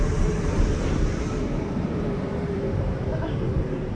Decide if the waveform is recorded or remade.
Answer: remade